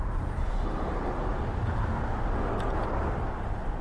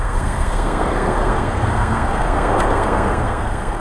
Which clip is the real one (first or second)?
first